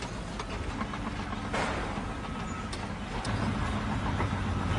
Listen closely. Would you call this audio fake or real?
real